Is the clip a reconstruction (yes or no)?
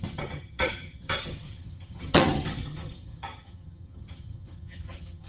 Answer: yes